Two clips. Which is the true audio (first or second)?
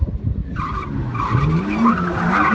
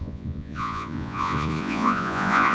first